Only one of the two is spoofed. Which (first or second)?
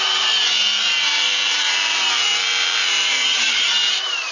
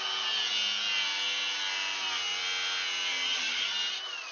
first